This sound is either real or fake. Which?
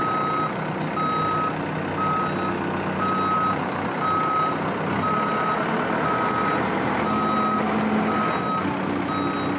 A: real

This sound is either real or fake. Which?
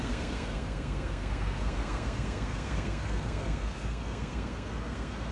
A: fake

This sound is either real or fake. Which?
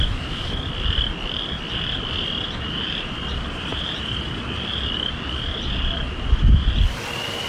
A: real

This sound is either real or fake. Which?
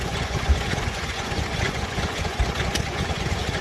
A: fake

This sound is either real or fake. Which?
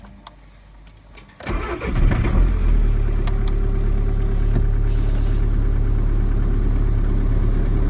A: real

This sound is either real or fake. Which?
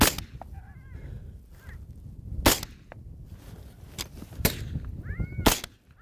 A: real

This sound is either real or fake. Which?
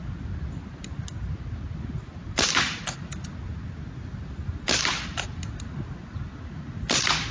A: real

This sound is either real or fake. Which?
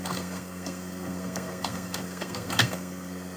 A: fake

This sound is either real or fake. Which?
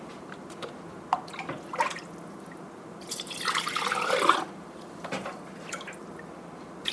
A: real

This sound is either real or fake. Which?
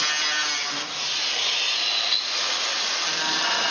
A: real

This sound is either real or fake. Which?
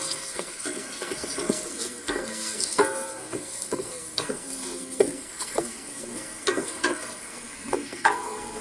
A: fake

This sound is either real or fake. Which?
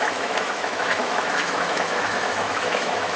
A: fake